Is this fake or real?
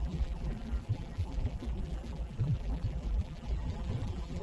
fake